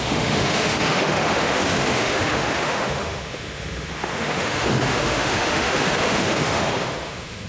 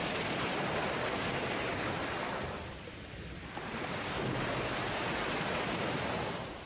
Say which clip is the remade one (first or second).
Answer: first